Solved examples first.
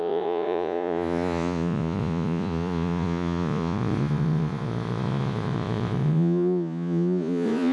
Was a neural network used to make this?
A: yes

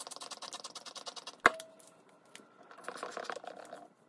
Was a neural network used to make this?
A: no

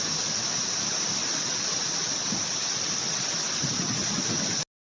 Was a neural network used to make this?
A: no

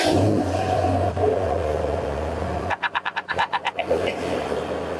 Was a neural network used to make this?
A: yes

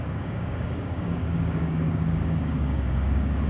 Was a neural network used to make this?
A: yes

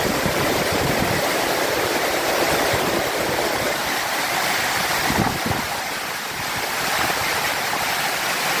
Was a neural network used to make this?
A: yes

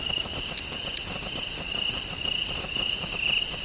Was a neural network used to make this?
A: yes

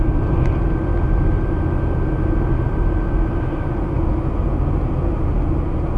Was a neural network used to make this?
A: no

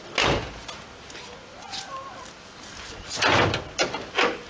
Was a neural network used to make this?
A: no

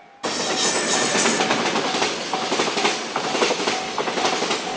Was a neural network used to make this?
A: no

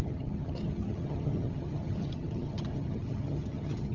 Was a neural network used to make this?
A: yes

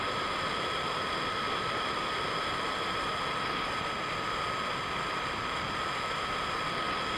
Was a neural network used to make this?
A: no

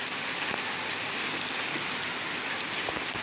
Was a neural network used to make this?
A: yes